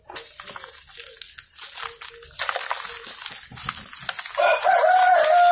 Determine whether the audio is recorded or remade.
recorded